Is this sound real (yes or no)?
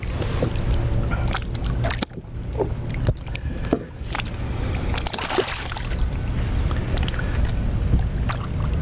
yes